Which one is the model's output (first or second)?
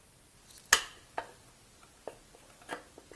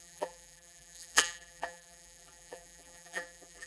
second